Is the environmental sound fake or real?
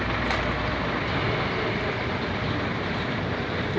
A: real